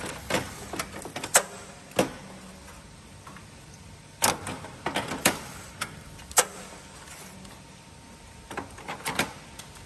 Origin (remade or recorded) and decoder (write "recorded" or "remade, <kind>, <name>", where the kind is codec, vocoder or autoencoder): recorded